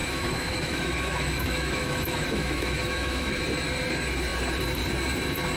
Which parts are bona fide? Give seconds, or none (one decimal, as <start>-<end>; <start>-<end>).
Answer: 3.4-5.6